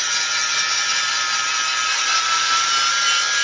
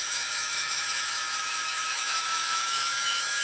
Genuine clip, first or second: first